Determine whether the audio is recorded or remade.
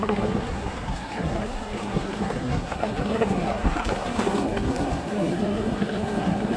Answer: remade